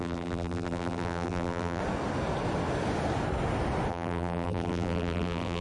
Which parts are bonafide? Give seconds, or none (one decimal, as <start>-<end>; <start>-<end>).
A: 1.8-3.9